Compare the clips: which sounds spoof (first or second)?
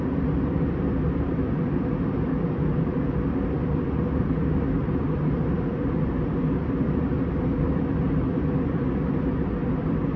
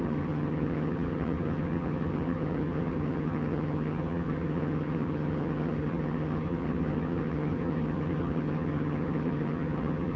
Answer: second